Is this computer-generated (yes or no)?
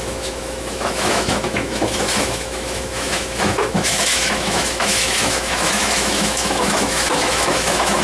yes